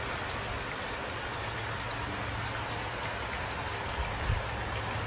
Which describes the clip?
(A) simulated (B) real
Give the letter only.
B